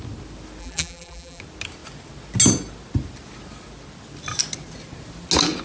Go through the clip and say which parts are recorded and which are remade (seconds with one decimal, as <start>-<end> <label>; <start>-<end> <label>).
0.0-0.6 recorded; 0.6-1.4 remade; 1.4-5.6 recorded

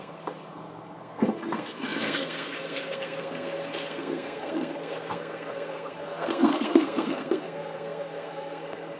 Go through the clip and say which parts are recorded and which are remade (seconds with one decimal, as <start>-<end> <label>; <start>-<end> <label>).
0.0-9.0 remade

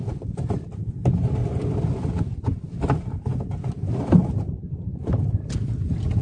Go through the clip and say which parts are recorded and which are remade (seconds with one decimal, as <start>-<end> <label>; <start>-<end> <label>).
0.0-6.2 recorded

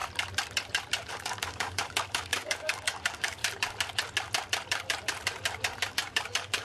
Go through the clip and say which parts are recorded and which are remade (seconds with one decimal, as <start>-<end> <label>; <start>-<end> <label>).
0.0-1.1 recorded; 1.1-3.4 remade; 3.4-5.9 recorded; 5.9-6.6 remade